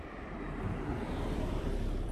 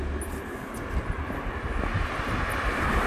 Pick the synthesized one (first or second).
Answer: first